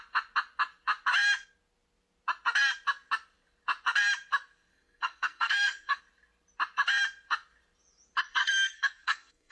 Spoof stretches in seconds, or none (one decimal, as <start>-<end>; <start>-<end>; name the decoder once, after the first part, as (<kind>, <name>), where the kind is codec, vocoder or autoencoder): 4.7-6.0 (codec, SNAC); 8.4-9.5

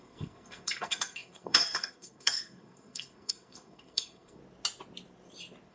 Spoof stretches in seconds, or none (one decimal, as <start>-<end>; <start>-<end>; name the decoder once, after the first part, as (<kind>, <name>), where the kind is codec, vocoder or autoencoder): 0.0-4.4 (codec, SNAC)

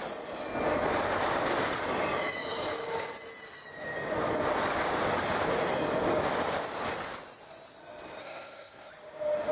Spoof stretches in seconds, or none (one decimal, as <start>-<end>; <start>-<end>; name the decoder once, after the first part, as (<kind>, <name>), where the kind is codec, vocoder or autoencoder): 8.2-8.9 (codec, SNAC)

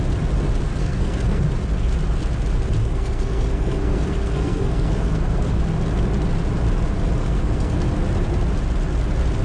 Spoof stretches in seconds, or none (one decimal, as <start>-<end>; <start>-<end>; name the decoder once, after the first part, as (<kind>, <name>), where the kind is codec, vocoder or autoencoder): 0.8-1.4 (codec, SNAC); 2.8-5.6; 7.2-7.8